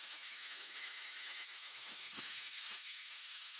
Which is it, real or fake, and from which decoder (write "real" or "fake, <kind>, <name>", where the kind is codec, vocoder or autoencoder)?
fake, autoencoder, DAC-VAE